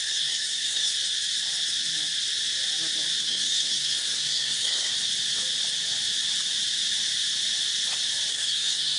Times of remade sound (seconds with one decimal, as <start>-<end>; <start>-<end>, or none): 0.0-0.9; 3.2-4.9; 8.3-9.0